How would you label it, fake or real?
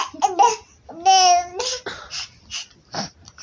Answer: real